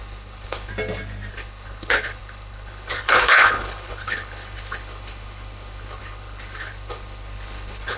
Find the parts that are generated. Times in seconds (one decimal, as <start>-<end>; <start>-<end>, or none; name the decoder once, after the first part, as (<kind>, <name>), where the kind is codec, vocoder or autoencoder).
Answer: 0.0-0.7 (codec, HILCodec); 1.3-8.0